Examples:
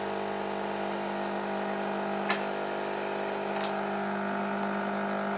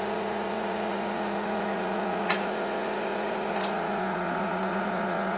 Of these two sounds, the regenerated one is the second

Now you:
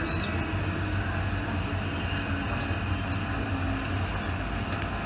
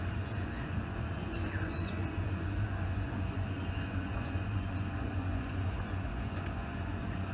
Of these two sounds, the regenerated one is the second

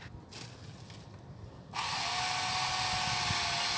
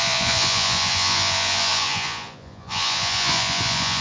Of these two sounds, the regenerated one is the second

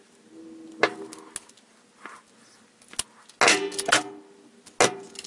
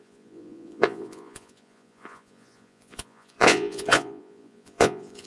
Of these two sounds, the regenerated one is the second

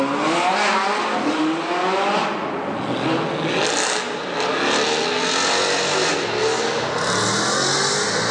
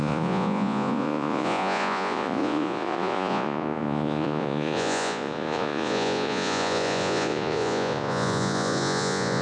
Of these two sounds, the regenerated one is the second